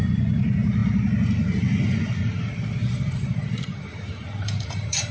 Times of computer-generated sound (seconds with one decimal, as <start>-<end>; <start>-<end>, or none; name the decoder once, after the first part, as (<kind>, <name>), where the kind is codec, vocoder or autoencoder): 2.8-5.1 (vocoder, BigVGAN v2)